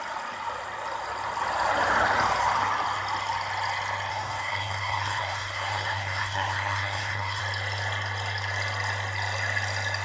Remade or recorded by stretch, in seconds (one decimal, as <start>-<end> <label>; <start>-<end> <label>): 0.0-4.1 recorded; 4.1-7.4 remade; 7.4-10.0 recorded